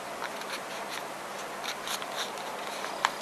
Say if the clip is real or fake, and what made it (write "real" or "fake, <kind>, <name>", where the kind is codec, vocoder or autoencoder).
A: real